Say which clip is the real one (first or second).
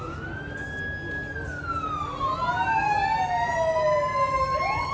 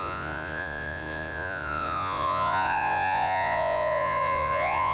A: first